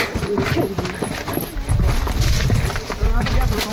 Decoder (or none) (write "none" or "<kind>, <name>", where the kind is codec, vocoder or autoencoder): vocoder, BigVGAN v2